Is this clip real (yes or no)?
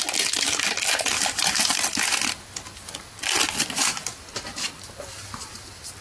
yes